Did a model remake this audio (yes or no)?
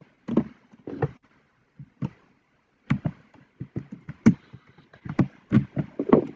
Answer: no